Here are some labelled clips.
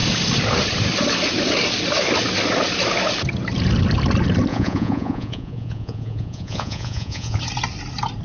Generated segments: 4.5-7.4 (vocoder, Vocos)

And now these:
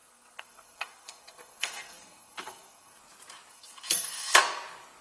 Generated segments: 0.0-3.0 (codec, SNAC); 3.5-4.4

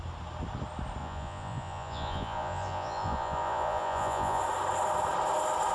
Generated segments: 1.0-4.4 (vocoder, Vocos)

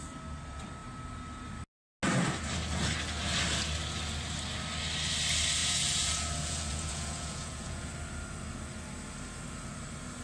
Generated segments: 5.6-7.9 (vocoder, Vocos)

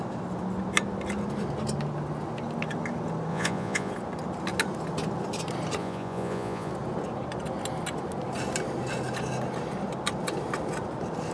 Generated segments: 3.3-3.9 (vocoder, Vocos); 5.8-6.7

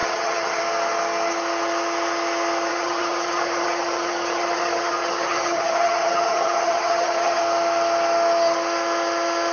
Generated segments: 0.0-0.6 (vocoder, HiFi-GAN); 2.7-7.4